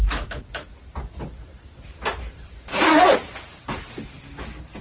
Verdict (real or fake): real